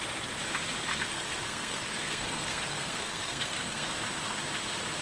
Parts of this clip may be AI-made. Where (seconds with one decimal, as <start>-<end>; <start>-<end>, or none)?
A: 0.9-3.9